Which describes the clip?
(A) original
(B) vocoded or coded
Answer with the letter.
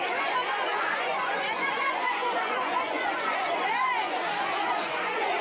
B